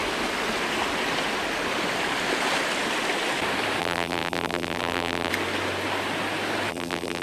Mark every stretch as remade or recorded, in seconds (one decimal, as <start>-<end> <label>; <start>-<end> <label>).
0.0-3.8 recorded; 3.8-5.3 remade; 5.3-6.7 recorded; 6.7-7.2 remade